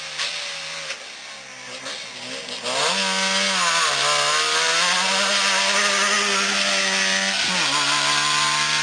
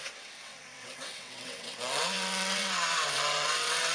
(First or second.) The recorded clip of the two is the first